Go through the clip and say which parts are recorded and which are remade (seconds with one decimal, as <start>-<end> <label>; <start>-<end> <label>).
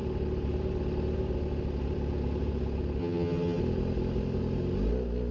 0.0-3.0 recorded; 3.0-3.6 remade; 3.6-5.3 recorded